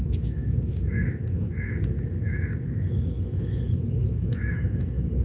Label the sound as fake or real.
fake